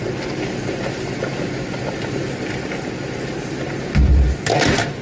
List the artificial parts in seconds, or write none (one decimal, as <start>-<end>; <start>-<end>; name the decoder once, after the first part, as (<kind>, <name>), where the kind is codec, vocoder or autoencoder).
none